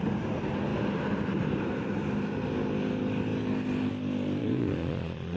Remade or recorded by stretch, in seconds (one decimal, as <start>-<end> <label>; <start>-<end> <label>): 0.0-4.4 recorded; 4.4-5.4 remade